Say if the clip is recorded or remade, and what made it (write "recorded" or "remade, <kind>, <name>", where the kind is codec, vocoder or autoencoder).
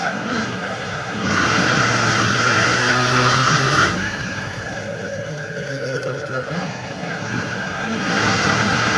remade, codec, SNAC